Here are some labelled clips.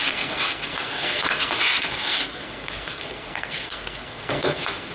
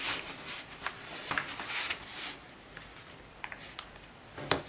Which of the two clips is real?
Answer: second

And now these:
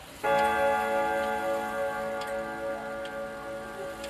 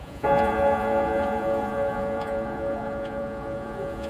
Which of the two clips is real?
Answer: first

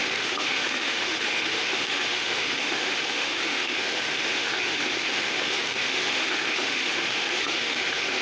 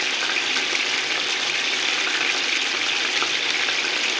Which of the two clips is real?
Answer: second